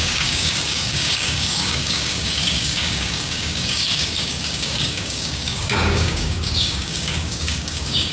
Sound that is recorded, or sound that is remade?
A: remade